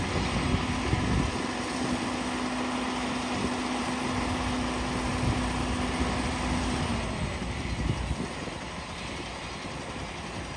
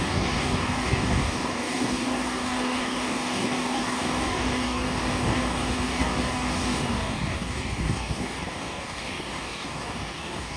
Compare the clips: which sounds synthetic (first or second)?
second